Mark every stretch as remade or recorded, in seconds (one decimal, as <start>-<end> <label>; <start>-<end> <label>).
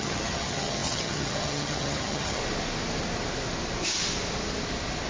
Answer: 0.0-2.4 remade; 2.4-5.1 recorded